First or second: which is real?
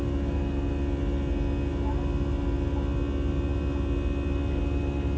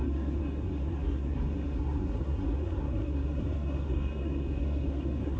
first